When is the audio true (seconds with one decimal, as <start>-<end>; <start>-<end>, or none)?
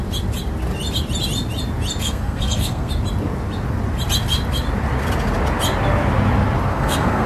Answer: 0.0-2.0; 2.9-6.7